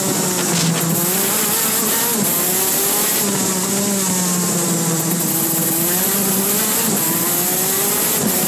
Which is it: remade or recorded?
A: recorded